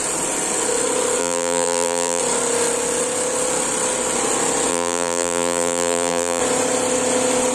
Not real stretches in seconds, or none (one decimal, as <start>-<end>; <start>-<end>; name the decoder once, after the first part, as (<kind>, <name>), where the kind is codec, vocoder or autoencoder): 1.2-2.2 (vocoder, BigVGAN v2); 4.7-6.4